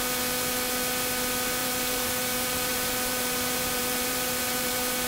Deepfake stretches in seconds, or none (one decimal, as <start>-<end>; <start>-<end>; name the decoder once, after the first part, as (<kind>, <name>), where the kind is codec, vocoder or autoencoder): 1.6-5.1 (vocoder, BigVGAN v2)